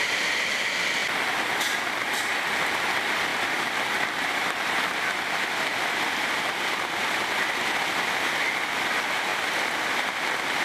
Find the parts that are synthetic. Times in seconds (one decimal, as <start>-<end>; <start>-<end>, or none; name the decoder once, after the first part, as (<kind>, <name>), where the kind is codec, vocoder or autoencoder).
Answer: 1.0-1.8 (vocoder, BigVGAN v2); 3.3-8.0; 9.3-9.9